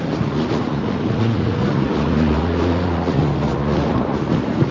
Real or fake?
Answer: fake